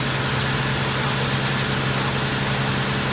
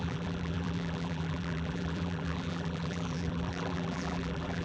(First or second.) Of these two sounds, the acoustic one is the first